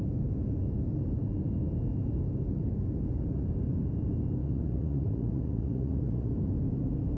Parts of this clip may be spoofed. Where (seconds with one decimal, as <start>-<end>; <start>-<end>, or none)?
4.4-6.3